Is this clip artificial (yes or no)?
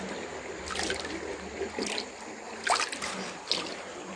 no